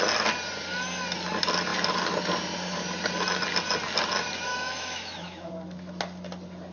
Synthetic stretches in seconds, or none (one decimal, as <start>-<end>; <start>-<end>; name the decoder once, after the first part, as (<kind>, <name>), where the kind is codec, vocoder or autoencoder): 4.5-5.5 (autoencoder, DAC-VAE)